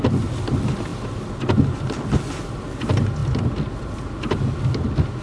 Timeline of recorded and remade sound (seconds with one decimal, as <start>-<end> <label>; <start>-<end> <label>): 0.0-5.2 recorded